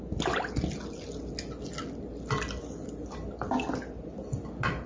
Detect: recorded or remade recorded